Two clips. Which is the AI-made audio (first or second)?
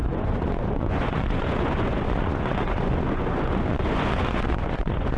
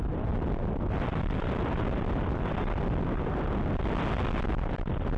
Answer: first